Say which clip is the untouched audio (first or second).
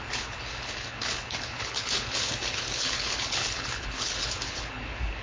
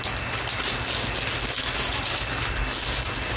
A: second